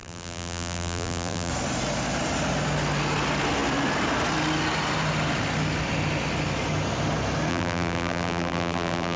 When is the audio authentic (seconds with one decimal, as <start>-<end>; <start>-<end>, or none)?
1.5-7.5